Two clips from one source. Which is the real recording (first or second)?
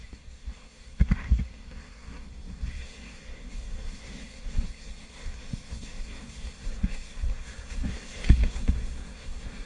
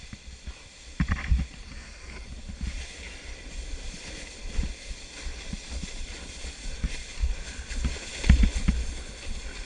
second